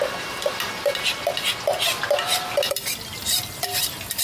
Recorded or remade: recorded